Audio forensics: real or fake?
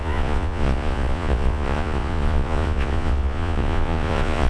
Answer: fake